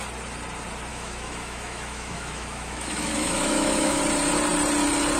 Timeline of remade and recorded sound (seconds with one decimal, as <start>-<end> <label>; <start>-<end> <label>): 0.0-0.9 recorded; 0.9-4.0 remade; 4.0-5.2 recorded